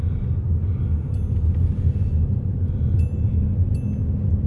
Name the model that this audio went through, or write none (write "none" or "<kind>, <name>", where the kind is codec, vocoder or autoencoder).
none